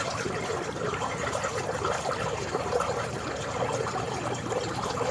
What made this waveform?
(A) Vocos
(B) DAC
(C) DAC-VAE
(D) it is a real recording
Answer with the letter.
D